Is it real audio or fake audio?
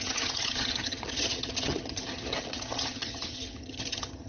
fake